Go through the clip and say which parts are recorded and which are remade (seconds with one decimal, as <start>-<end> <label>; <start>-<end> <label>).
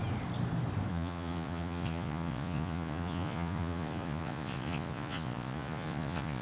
0.0-0.9 recorded; 0.9-6.4 remade